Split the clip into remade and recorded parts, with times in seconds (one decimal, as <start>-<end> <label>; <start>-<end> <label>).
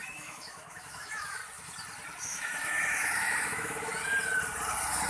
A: 0.0-1.4 remade; 1.4-2.2 recorded; 2.2-3.9 remade; 3.9-5.1 recorded